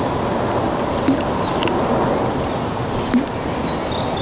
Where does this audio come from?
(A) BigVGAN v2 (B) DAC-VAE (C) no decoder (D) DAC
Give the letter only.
C